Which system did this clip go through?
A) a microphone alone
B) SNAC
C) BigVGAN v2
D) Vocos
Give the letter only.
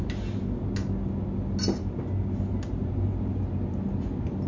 A